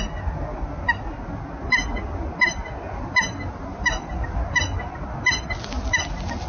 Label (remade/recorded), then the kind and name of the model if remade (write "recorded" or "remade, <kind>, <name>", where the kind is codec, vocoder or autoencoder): recorded